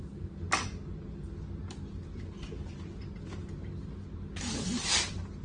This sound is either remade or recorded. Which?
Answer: recorded